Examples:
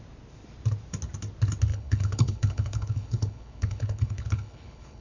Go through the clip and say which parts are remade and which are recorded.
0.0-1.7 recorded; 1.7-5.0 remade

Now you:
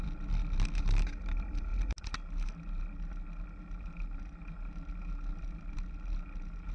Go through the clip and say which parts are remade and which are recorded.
0.0-6.7 recorded

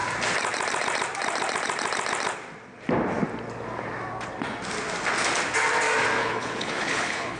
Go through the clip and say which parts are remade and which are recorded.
0.0-6.2 recorded; 6.2-7.4 remade

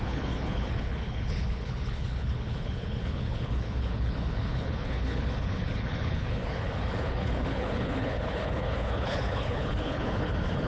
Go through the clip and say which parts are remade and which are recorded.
0.0-10.7 remade

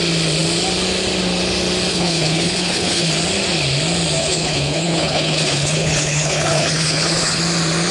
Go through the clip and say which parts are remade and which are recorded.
0.0-1.9 recorded; 1.9-3.1 remade; 3.1-4.2 recorded; 4.2-7.4 remade; 7.4-7.9 recorded

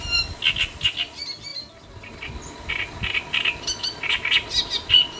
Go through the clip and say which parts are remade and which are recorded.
0.0-5.2 recorded